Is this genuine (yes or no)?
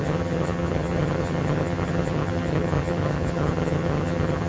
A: no